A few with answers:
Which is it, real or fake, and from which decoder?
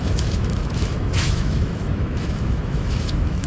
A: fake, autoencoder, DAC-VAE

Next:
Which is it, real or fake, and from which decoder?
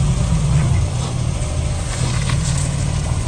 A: fake, vocoder, Vocos